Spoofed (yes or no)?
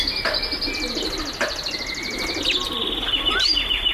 no